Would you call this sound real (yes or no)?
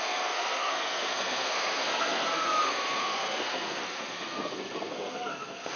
no